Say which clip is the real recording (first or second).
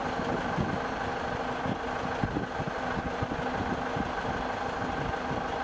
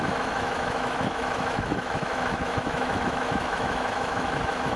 first